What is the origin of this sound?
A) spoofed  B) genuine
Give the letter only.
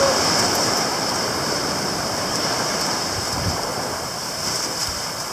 A